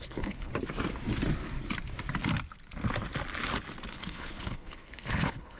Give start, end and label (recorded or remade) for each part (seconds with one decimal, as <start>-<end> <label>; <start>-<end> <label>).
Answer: 0.0-0.5 remade; 0.5-3.9 recorded; 3.9-5.6 remade